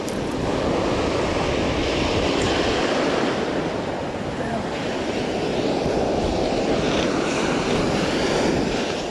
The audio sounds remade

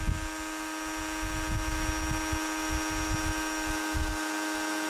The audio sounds recorded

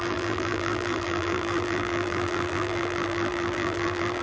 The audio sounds remade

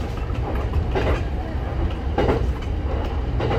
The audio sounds recorded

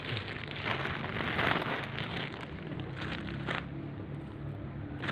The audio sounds recorded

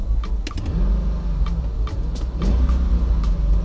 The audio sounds recorded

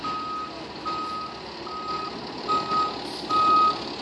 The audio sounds recorded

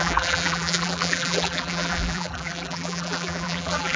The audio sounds remade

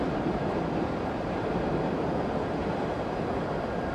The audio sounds remade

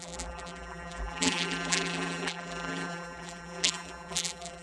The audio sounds remade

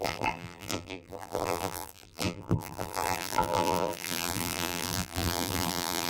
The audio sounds remade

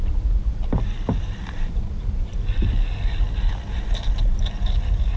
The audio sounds remade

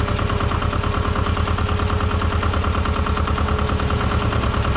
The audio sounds recorded